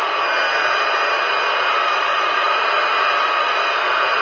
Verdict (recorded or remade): recorded